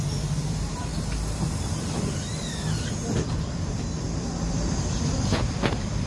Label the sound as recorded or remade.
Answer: remade